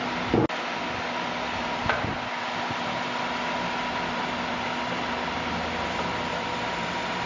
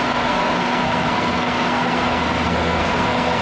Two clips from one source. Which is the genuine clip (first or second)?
first